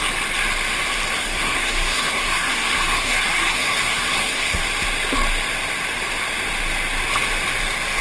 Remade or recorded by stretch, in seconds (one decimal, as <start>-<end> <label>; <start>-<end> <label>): 0.0-1.2 recorded; 1.2-4.6 remade; 4.6-8.0 recorded